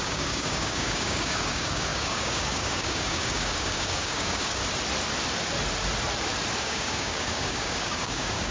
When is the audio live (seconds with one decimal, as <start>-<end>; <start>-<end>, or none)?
4.6-6.6